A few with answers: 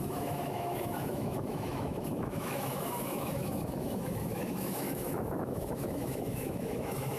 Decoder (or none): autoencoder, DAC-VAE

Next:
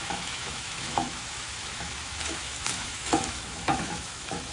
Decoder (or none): autoencoder, DAC-VAE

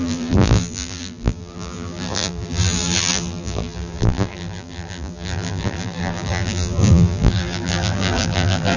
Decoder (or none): vocoder, BigVGAN v2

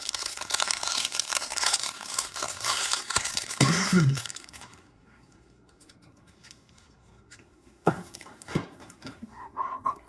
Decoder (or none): codec, SNAC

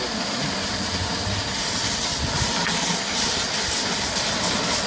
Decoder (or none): none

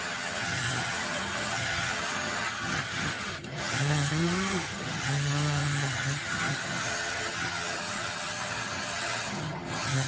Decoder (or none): vocoder, HiFi-GAN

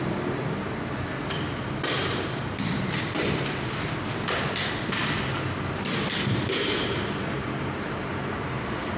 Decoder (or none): none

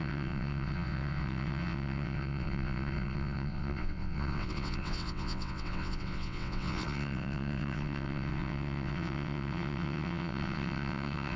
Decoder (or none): vocoder, WaveNeXt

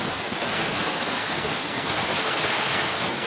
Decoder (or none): codec, SNAC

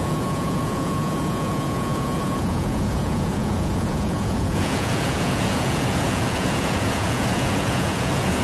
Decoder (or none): vocoder, Vocos